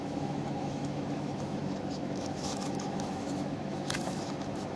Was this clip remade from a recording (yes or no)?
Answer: yes